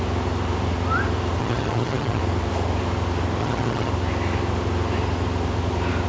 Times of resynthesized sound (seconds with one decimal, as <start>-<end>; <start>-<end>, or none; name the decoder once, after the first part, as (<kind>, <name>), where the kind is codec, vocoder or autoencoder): 1.4-2.2 (vocoder, HiFi-GAN); 3.4-3.9